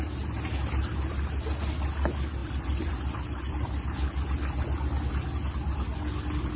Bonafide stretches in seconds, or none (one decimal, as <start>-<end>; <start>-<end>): 0.0-2.4; 3.4-6.6